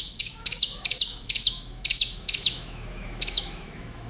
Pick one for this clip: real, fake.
fake